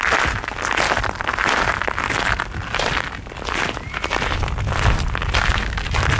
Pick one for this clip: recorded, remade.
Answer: recorded